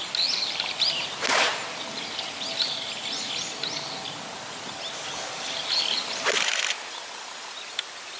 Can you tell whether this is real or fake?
real